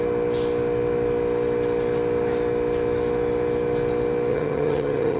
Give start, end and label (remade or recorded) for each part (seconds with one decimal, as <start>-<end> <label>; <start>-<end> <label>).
0.0-4.3 recorded; 4.3-5.2 remade